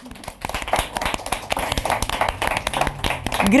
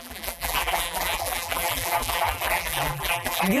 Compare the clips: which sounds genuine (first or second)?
first